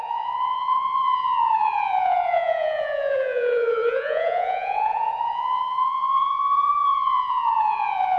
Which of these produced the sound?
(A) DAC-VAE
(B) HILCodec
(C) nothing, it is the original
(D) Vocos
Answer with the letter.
D